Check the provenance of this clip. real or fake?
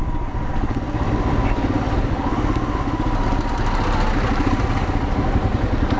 real